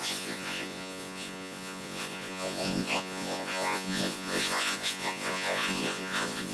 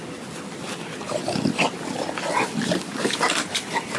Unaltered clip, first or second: second